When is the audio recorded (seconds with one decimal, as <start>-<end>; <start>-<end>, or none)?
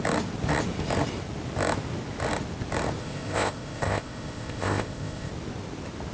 0.0-3.0; 5.3-6.1